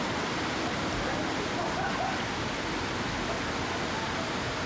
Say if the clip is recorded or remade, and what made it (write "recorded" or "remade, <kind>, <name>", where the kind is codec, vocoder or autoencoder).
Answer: recorded